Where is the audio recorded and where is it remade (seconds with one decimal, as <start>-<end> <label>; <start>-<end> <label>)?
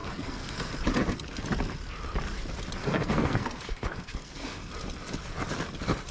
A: 0.0-0.7 remade; 0.7-2.8 recorded; 2.8-4.7 remade; 4.7-6.1 recorded